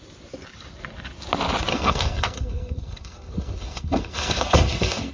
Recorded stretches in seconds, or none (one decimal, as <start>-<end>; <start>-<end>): 0.0-1.7